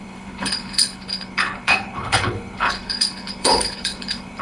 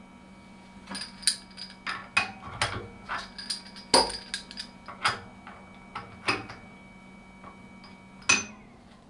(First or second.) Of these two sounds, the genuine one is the second